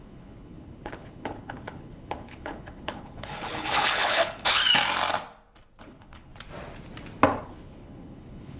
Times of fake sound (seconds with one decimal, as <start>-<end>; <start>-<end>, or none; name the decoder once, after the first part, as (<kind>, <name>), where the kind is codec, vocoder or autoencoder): 0.0-4.6 (codec, HILCodec); 5.8-6.3; 7.4-8.6